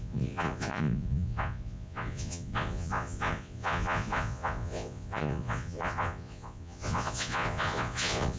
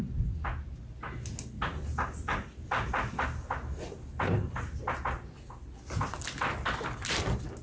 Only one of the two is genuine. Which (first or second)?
second